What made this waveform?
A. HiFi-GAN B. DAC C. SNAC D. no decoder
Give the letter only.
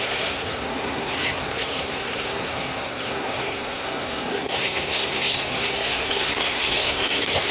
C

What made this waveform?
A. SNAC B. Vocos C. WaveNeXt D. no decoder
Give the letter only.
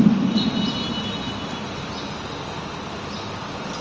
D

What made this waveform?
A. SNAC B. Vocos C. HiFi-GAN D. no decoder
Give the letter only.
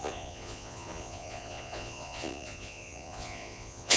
B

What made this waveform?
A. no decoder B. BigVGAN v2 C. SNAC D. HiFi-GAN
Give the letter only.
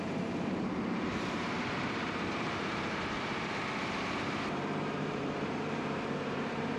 B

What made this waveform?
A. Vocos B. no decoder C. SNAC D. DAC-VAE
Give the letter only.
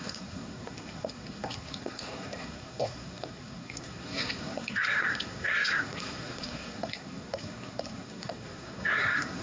C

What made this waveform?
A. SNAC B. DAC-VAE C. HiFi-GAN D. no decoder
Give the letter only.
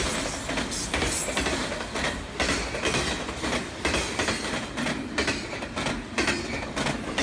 D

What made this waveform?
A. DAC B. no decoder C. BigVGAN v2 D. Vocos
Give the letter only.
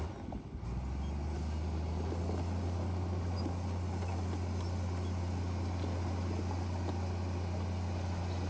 B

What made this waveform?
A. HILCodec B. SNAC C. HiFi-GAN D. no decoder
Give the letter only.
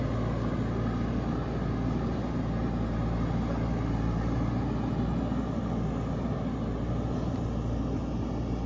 D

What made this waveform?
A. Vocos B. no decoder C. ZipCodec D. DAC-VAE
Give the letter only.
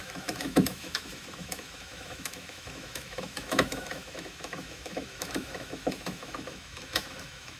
D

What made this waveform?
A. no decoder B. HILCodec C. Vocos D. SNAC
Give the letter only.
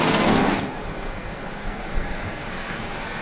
D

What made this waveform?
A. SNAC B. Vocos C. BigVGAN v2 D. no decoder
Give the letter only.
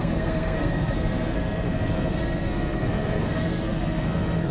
A